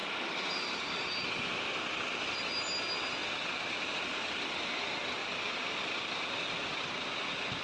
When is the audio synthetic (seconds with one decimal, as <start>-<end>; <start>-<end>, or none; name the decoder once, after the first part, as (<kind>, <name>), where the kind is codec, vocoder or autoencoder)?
0.0-0.5 (vocoder, BigVGAN v2); 3.2-4.7; 5.2-5.7